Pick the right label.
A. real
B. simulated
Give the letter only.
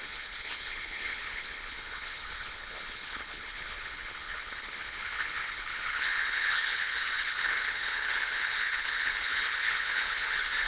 B